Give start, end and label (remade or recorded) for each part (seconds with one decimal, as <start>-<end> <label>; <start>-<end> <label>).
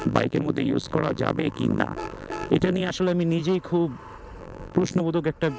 0.0-2.9 remade; 2.9-4.4 recorded; 4.4-5.0 remade; 5.0-5.6 recorded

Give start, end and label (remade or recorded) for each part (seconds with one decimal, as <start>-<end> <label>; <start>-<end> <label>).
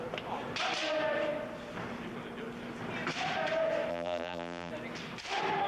0.0-3.9 recorded; 3.9-4.7 remade; 4.7-5.7 recorded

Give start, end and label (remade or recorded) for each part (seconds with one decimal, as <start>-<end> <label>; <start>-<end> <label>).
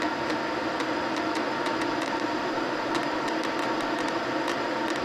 0.0-1.7 recorded; 1.7-4.2 remade; 4.2-5.0 recorded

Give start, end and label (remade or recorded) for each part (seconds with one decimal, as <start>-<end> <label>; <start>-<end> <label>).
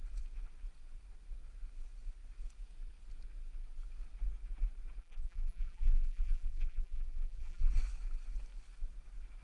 0.0-5.0 recorded; 5.0-7.7 remade; 7.7-9.4 recorded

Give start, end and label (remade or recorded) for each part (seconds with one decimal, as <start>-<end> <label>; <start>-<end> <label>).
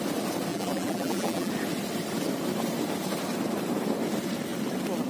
0.0-0.5 recorded; 0.5-1.5 remade; 1.5-5.1 recorded